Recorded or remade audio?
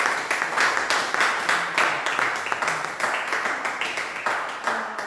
recorded